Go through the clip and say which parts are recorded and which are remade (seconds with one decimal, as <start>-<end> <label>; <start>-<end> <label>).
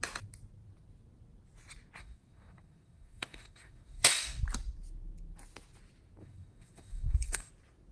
0.0-2.0 recorded; 2.0-4.4 remade; 4.4-6.2 recorded; 6.2-7.5 remade; 7.5-7.9 recorded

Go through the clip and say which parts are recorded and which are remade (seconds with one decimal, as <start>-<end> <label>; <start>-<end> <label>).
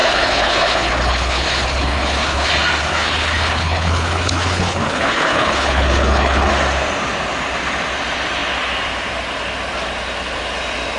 0.0-2.5 remade; 2.5-2.9 recorded; 2.9-6.5 remade; 6.5-11.0 recorded